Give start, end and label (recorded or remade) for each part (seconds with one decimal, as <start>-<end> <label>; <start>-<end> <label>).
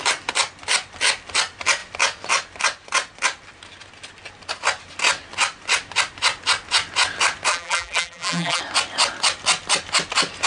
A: 0.0-7.5 recorded; 7.5-8.6 remade; 8.6-10.5 recorded